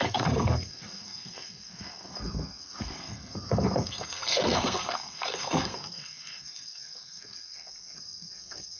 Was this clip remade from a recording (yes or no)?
yes